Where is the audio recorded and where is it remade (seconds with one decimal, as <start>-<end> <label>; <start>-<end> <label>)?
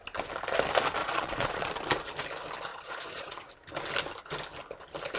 0.0-1.0 recorded; 1.0-1.7 remade; 1.7-2.7 recorded; 2.7-3.5 remade; 3.5-5.2 recorded